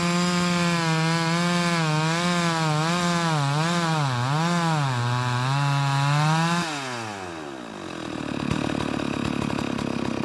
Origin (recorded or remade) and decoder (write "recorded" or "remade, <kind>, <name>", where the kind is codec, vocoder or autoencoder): recorded